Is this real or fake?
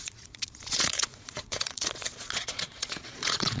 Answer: fake